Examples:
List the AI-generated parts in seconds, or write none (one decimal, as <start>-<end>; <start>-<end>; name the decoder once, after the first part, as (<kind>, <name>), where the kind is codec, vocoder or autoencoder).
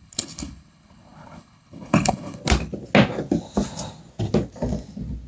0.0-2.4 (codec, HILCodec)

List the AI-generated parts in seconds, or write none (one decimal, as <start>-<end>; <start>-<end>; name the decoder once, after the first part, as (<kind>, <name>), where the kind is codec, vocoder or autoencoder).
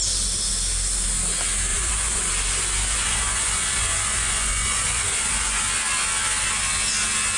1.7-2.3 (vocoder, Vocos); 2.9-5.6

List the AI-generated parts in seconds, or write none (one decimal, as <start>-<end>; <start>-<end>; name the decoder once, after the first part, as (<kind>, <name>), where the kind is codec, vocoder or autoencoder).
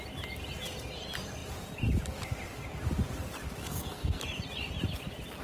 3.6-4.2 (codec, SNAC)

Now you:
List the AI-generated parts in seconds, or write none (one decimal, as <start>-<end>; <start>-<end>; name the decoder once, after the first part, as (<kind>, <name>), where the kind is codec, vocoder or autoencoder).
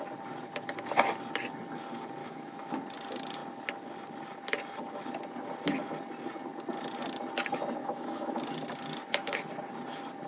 2.2-2.8 (autoencoder, DAC-VAE); 7.8-8.4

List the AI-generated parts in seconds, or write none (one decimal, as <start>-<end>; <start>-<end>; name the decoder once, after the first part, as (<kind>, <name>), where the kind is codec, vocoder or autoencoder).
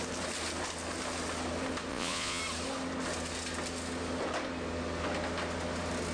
1.9-2.4 (vocoder, Vocos)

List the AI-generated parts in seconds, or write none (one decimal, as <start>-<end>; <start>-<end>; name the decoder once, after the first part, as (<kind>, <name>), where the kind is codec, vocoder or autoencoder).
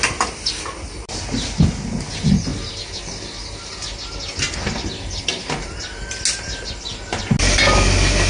none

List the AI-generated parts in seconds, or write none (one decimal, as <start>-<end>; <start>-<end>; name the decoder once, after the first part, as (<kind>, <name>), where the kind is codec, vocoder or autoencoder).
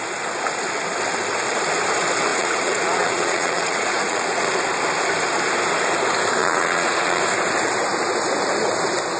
2.3-4.5 (vocoder, Vocos); 6.4-7.2